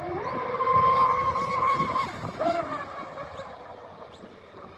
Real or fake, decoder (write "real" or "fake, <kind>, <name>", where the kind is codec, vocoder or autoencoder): fake, vocoder, BigVGAN v2